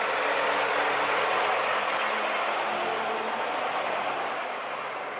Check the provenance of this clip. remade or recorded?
recorded